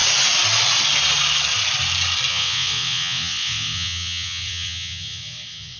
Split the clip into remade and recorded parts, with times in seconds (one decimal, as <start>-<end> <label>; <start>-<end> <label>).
0.0-2.3 recorded; 2.3-5.8 remade

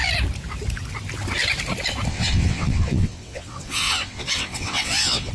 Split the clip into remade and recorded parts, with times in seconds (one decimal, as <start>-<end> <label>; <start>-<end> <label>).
0.0-2.1 recorded; 2.1-5.3 remade

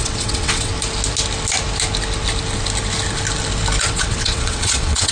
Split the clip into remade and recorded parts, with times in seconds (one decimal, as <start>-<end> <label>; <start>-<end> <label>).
0.0-0.7 remade; 0.7-3.8 recorded; 3.8-5.1 remade

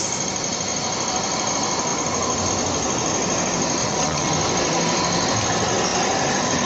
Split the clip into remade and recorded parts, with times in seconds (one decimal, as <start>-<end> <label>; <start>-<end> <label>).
0.0-3.8 recorded; 3.8-4.3 remade; 4.3-6.7 recorded

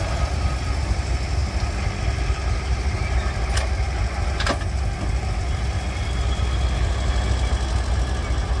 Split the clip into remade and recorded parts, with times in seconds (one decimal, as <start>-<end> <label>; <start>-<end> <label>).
0.0-8.6 recorded